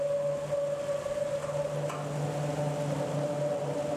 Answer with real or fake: real